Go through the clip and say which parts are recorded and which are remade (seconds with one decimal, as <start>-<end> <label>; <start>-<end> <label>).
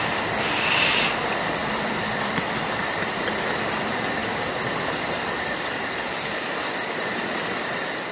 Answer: 0.0-4.2 remade; 4.2-4.8 recorded; 4.8-8.1 remade